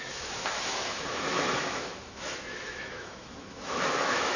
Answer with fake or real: fake